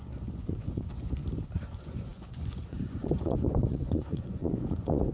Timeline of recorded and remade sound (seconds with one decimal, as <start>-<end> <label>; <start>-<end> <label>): 0.0-1.2 remade; 1.2-1.7 recorded; 1.7-5.1 remade